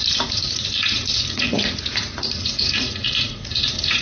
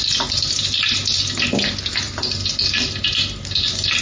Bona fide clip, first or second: second